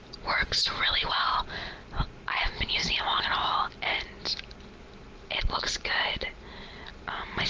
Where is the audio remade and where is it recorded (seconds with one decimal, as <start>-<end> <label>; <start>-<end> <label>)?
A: 0.0-7.5 recorded